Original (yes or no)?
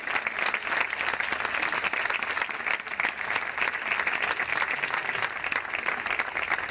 yes